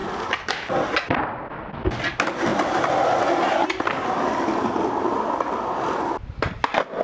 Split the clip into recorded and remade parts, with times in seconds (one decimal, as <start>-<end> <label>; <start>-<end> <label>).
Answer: 0.0-7.0 recorded